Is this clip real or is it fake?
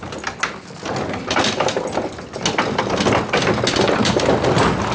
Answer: real